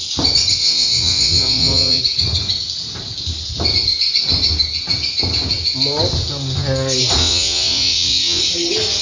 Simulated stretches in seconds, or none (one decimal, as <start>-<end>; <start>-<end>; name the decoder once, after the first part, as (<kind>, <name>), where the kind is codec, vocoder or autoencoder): 0.6-2.0 (vocoder, WaveNeXt); 7.2-8.4